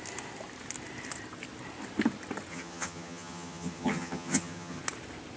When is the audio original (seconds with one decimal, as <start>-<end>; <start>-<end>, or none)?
0.0-2.5; 4.8-5.4